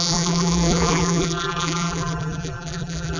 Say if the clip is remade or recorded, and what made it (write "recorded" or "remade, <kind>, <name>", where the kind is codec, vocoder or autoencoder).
remade, vocoder, BigVGAN v2